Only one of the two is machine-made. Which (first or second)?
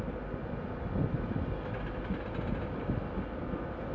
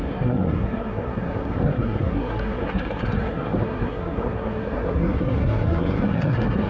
second